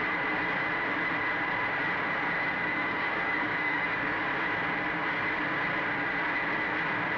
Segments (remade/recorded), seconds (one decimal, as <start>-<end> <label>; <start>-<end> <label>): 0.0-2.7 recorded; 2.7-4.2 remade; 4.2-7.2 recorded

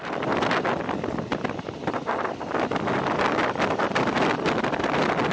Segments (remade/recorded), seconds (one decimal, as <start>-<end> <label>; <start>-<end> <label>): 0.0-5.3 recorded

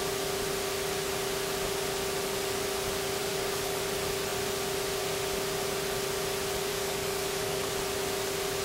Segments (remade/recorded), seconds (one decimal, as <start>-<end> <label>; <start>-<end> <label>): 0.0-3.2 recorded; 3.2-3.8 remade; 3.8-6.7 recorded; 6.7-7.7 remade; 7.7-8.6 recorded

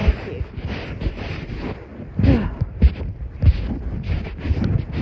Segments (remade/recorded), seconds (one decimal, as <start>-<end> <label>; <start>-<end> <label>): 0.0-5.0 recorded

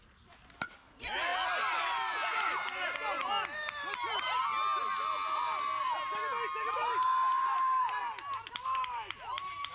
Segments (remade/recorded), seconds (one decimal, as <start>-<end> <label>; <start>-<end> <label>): 0.0-9.7 recorded

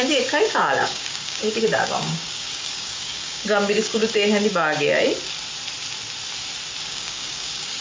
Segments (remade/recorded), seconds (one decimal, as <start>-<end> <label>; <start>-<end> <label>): 0.0-4.0 remade; 4.0-4.5 recorded; 4.5-4.9 remade; 4.9-6.8 recorded; 6.8-7.8 remade